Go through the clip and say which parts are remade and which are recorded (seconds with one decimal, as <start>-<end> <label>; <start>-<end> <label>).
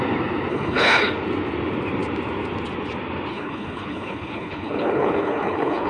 0.0-0.5 recorded; 0.5-1.1 remade; 1.1-3.3 recorded; 3.3-5.9 remade